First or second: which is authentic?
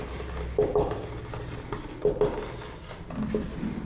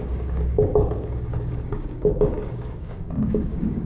first